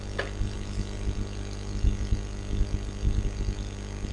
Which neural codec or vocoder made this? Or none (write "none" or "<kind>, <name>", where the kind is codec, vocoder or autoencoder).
none